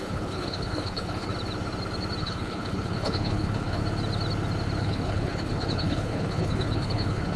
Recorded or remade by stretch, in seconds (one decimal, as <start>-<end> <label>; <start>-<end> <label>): 0.0-1.3 remade; 1.3-2.2 recorded; 2.2-3.8 remade; 3.8-4.8 recorded; 4.8-7.4 remade

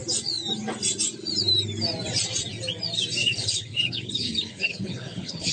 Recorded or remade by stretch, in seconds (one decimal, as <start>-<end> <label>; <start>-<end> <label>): 0.0-3.2 recorded; 3.2-5.5 remade